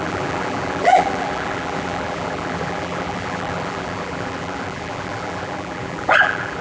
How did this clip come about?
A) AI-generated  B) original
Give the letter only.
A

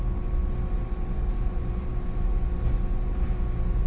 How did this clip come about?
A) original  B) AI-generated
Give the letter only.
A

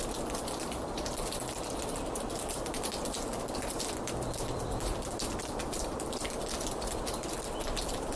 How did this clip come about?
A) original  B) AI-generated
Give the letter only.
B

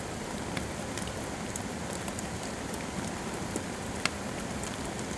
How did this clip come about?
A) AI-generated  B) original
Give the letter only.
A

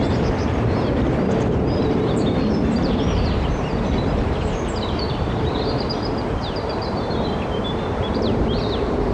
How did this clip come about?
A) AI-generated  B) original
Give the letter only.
A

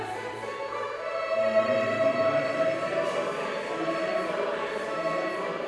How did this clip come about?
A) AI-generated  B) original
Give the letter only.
A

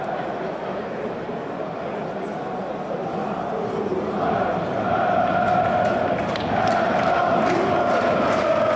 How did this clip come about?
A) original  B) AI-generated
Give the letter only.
A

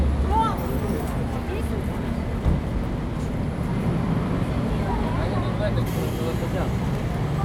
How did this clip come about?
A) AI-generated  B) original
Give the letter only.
B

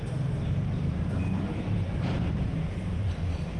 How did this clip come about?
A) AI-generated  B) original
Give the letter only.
A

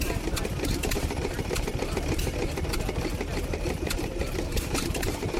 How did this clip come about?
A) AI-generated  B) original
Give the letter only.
A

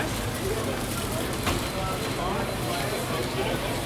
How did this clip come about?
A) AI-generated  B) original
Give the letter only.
B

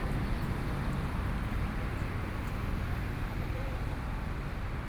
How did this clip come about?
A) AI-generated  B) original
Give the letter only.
A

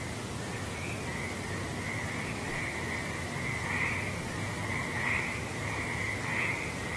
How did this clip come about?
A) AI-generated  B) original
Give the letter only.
B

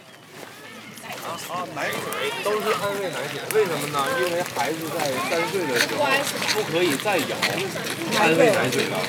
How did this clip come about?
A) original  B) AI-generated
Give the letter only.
A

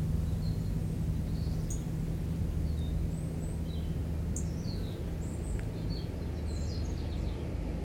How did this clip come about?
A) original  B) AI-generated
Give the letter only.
A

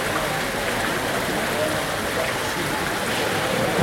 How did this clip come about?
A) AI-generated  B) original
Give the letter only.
B